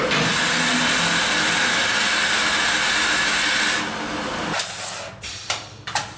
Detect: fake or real real